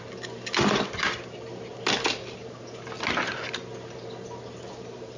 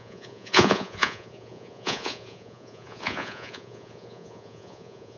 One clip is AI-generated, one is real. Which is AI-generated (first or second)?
second